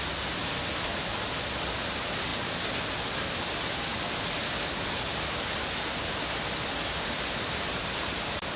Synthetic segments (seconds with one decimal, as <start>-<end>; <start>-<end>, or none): none